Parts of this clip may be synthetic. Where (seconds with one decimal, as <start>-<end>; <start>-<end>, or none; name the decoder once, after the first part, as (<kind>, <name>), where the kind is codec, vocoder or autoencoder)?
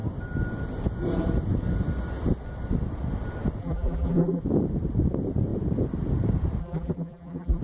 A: 3.6-4.4 (vocoder, BigVGAN v2); 6.6-7.6